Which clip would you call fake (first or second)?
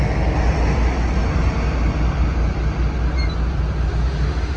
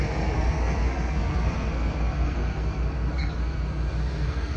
second